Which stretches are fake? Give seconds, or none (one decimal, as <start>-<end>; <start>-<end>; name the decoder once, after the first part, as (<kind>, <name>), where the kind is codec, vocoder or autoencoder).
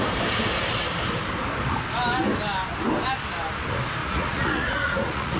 4.0-5.4 (vocoder, Vocos)